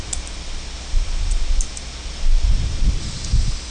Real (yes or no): yes